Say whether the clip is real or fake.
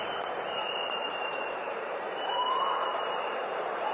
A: fake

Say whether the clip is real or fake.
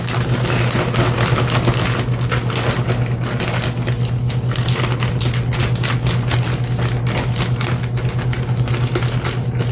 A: real